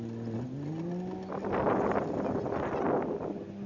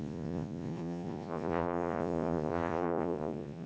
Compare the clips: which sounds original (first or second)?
first